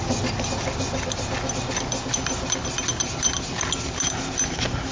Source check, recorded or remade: recorded